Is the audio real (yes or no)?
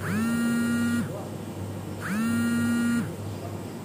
yes